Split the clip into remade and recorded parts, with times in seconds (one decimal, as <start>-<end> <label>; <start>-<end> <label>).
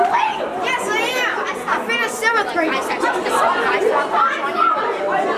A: 0.0-2.3 recorded; 2.3-4.3 remade; 4.3-5.4 recorded